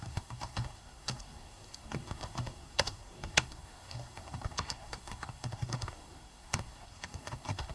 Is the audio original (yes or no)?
no